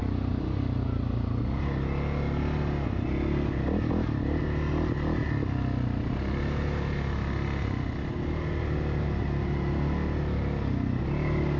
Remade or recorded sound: recorded